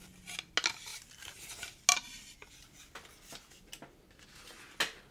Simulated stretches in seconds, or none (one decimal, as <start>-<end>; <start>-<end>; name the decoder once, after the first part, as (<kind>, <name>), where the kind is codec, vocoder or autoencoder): none